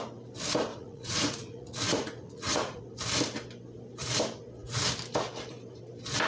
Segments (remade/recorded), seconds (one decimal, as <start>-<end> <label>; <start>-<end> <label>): 0.0-0.7 recorded; 0.7-2.8 remade; 2.8-6.3 recorded